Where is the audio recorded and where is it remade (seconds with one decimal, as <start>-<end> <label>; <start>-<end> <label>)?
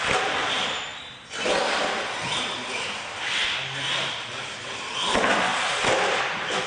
0.0-6.7 recorded